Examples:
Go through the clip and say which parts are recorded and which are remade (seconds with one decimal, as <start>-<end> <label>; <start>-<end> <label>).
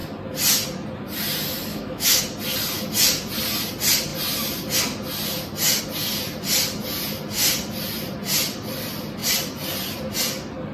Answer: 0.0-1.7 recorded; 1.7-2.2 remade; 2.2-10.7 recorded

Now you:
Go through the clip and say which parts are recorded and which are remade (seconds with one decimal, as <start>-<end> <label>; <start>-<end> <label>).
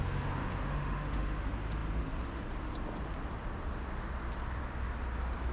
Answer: 0.0-0.4 recorded; 0.4-1.4 remade; 1.4-5.5 recorded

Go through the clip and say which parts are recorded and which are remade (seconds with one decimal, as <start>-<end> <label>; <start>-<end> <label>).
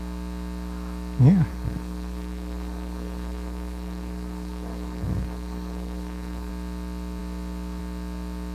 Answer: 0.0-1.5 recorded; 1.5-6.5 remade; 6.5-8.5 recorded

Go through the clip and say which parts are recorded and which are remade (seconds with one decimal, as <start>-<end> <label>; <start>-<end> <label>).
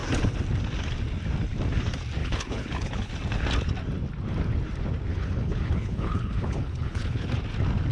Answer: 0.0-2.2 recorded; 2.2-3.1 remade; 3.1-5.1 recorded; 5.1-7.3 remade; 7.3-7.9 recorded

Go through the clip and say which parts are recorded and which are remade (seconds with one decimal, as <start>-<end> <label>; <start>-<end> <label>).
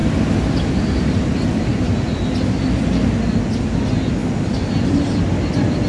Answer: 0.0-5.9 recorded